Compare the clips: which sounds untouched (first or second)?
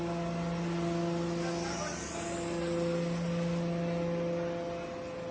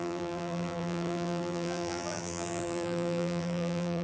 first